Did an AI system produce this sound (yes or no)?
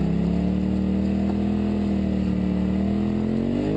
no